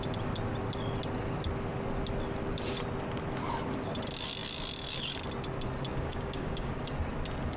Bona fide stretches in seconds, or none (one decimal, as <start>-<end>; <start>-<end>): 0.0-5.9; 6.7-7.6